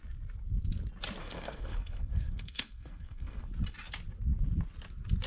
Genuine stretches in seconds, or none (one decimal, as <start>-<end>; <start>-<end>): 0.0-1.2; 3.5-5.3